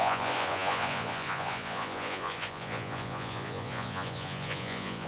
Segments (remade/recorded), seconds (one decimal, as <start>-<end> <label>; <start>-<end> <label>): 0.0-5.1 remade